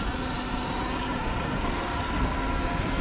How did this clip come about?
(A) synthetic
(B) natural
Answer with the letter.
B